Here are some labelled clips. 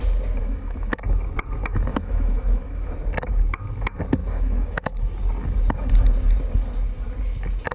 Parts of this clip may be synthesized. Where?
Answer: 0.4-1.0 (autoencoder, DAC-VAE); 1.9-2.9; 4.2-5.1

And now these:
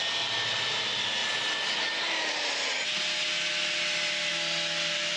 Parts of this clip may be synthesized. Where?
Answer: none

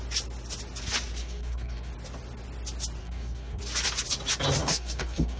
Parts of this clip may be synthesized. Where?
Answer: 1.2-1.9 (codec, DAC); 3.0-3.6; 4.6-5.4

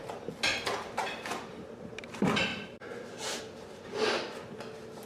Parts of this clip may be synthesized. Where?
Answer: 1.0-1.9 (vocoder, BigVGAN v2); 2.5-3.4

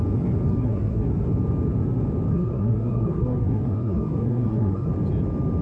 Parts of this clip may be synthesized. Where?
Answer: 0.5-1.1 (codec, SNAC); 2.3-4.9

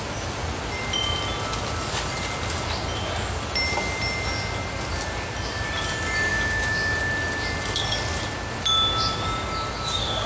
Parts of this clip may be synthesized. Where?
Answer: 6.3-7.0 (autoencoder, DAC-VAE)

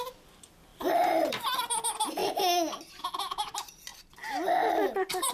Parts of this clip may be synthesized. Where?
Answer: 0.7-1.6 (vocoder, BigVGAN v2)

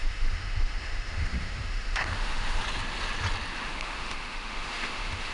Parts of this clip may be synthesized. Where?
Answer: 0.0-2.6 (autoencoder, DAC-VAE); 3.5-5.3